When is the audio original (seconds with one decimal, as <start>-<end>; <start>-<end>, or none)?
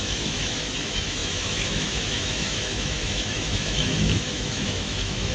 none